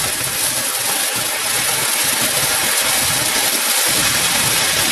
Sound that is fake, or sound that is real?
real